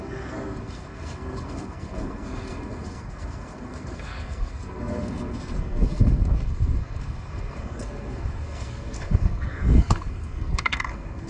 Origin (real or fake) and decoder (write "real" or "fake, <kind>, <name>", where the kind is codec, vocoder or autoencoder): fake, codec, SNAC